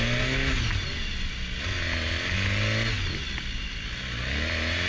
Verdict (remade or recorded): recorded